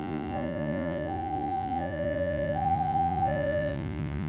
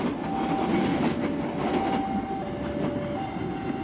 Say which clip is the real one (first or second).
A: second